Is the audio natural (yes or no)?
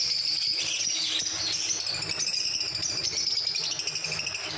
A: yes